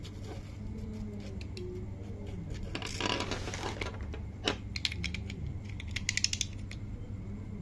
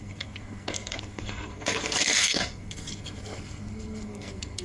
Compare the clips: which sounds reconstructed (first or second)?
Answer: second